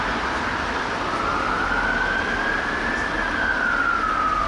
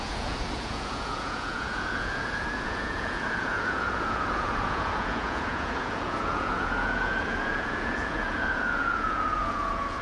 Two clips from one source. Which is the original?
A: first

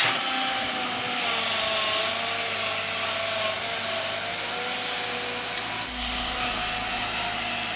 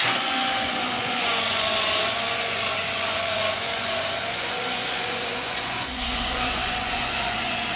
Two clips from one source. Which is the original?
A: first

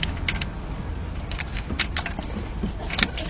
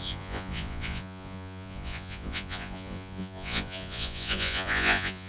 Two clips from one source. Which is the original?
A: first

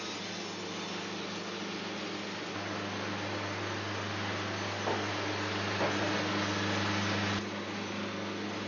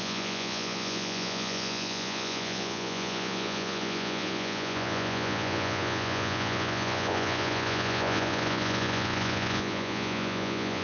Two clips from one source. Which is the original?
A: first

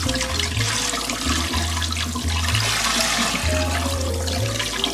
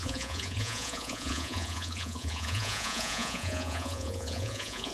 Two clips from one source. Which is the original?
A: first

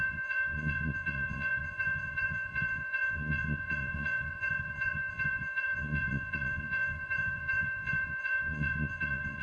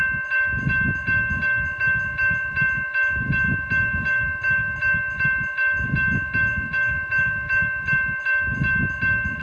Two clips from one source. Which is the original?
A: second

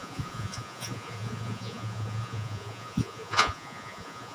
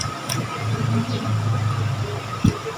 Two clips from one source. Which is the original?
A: second